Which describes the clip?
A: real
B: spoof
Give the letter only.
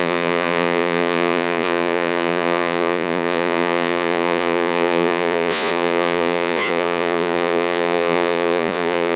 B